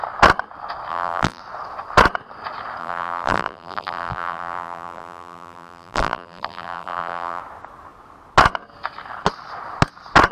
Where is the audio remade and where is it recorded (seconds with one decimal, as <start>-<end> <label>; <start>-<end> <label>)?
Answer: 0.0-0.9 recorded; 0.9-1.4 remade; 1.4-2.8 recorded; 2.8-7.4 remade; 7.4-10.3 recorded